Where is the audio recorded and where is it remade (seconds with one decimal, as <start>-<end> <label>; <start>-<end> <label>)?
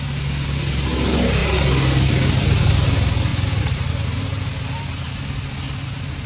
0.0-6.3 recorded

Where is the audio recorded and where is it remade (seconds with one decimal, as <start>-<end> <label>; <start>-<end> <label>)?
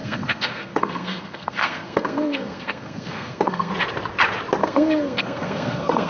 0.0-3.7 remade; 3.7-4.6 recorded; 4.6-6.1 remade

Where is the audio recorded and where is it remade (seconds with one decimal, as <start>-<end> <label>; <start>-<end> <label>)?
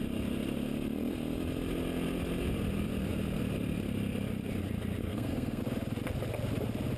0.0-5.0 recorded; 5.0-5.6 remade; 5.6-7.0 recorded